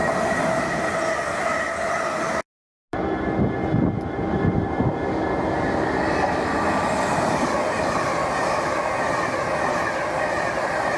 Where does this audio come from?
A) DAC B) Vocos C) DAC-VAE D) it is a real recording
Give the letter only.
D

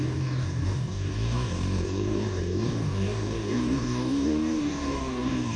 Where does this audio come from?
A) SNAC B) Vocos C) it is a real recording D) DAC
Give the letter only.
D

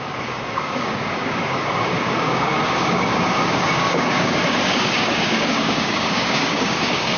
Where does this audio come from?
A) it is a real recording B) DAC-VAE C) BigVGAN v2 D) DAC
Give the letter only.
D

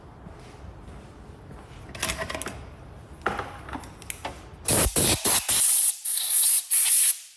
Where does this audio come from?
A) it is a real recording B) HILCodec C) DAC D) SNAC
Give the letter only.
A